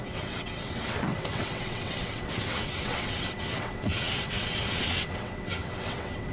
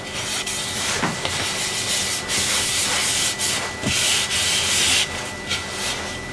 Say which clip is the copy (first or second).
first